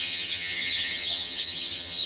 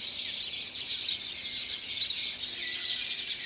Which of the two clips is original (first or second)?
second